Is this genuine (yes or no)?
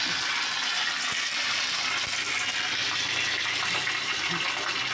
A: yes